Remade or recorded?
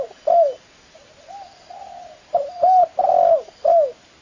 recorded